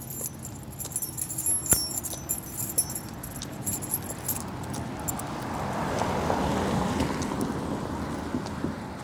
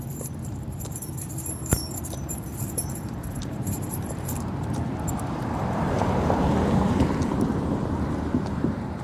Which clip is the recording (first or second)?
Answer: first